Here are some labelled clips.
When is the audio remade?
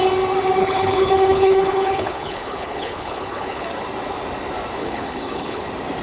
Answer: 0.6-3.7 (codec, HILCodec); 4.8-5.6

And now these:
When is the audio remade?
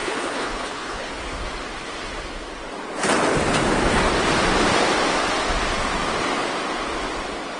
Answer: 0.0-1.1 (codec, HILCodec)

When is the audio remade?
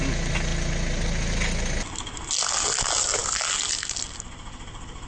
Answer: none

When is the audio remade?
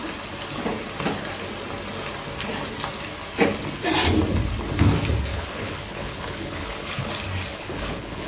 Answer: 5.3-7.1 (codec, HILCodec); 7.5-8.3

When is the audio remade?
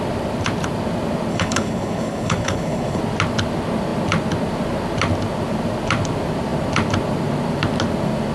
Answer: 1.3-3.0 (codec, HILCodec)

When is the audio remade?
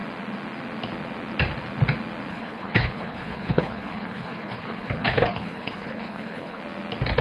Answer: 2.3-6.6 (codec, HILCodec)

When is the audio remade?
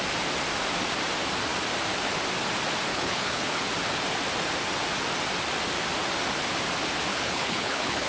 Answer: 2.9-3.6 (codec, HILCodec); 7.1-8.1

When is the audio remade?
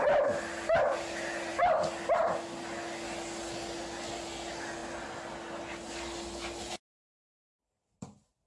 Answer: none